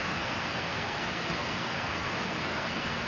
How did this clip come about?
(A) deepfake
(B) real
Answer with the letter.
A